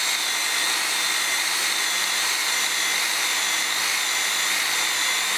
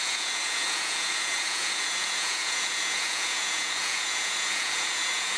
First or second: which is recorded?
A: first